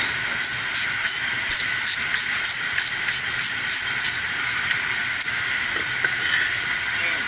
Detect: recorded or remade recorded